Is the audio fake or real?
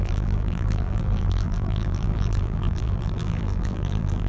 fake